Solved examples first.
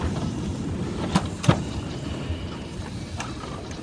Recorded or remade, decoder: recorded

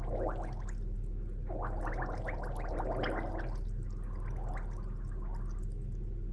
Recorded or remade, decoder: recorded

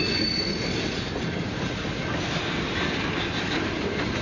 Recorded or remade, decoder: recorded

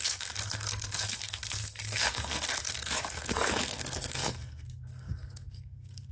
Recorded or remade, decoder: remade, codec, SNAC